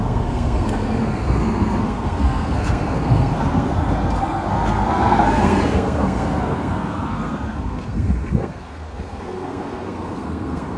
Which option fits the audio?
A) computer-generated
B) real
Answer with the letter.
A